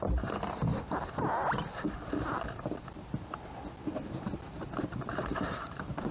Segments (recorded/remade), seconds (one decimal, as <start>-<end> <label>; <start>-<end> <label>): 0.0-6.1 recorded